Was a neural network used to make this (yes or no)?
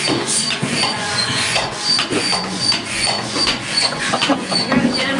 yes